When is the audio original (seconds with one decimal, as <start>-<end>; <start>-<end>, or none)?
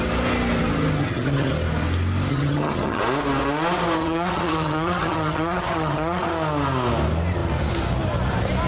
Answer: 0.0-1.0; 1.5-2.3; 3.0-4.0; 6.2-8.7